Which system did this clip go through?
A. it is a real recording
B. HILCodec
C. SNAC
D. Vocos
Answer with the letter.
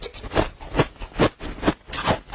A